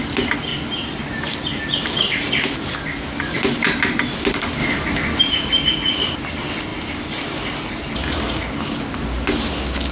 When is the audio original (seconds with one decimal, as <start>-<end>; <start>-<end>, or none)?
0.0-9.9